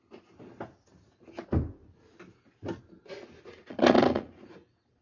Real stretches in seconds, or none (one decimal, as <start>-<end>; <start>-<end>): 0.0-3.5